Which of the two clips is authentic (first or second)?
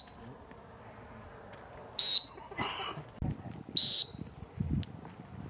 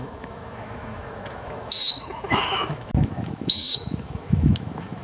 first